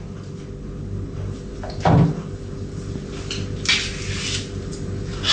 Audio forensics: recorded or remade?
recorded